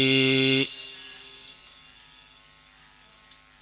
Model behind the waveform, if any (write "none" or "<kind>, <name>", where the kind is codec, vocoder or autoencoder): none